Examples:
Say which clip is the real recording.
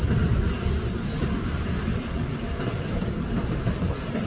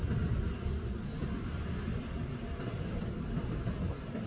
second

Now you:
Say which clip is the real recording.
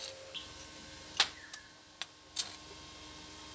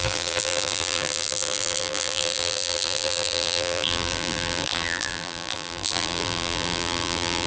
first